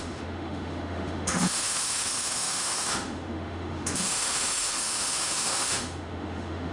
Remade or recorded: remade